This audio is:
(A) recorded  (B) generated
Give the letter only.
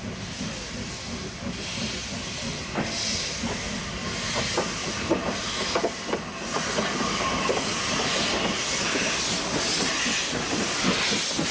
A